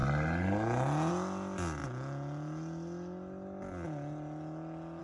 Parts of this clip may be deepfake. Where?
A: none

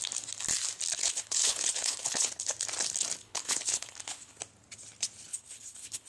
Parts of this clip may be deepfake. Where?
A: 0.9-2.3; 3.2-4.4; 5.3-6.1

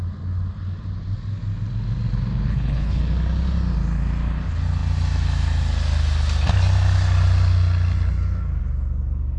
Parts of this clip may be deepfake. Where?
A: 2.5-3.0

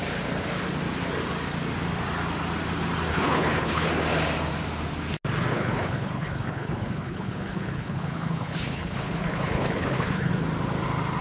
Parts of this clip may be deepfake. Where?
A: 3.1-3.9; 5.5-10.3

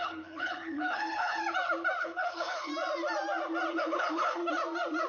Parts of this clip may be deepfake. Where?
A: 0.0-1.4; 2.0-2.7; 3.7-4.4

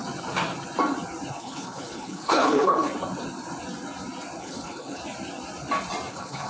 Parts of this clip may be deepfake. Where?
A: 1.3-2.9; 4.4-5.0; 6.1-6.5